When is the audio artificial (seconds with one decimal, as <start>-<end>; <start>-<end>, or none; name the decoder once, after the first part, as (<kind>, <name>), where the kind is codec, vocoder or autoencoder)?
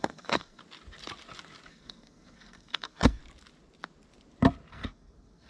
0.0-0.6 (codec, SNAC); 1.7-3.2; 4.7-5.5